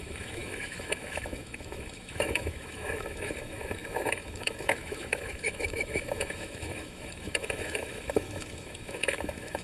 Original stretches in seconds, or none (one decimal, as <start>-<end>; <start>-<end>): none